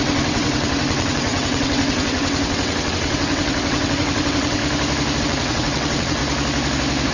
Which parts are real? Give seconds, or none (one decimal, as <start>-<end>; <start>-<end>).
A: 4.6-5.2; 6.2-7.1

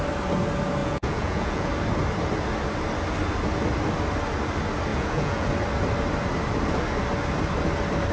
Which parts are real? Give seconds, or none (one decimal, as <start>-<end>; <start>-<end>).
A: 0.0-0.8; 1.7-4.9; 5.5-8.1